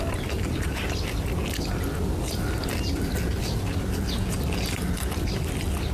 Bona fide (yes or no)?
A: yes